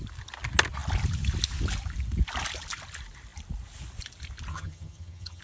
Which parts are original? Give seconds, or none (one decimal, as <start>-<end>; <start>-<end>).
0.0-4.5